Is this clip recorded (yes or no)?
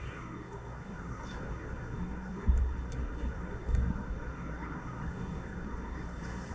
no